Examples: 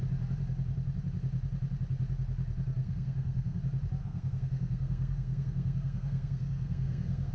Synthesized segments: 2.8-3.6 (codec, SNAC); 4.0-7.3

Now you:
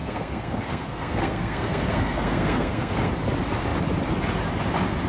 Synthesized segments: 0.0-3.1 (codec, SNAC)

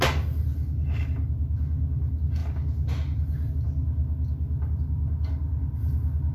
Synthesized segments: none

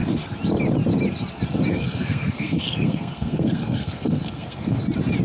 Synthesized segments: 1.7-4.8 (codec, SNAC)

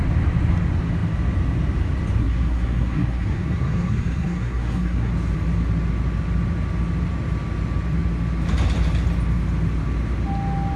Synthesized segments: 2.2-5.1 (codec, SNAC)

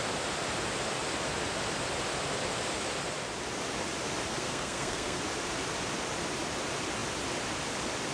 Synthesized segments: 4.3-5.2 (codec, SNAC)

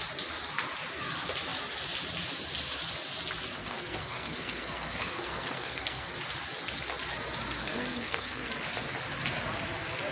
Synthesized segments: 3.6-6.1 (codec, SNAC); 7.6-8.5

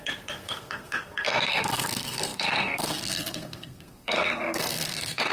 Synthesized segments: 0.0-5.3 (codec, SNAC)